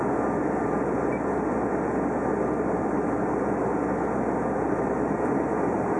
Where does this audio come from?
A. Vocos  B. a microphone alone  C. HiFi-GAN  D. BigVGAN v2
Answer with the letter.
B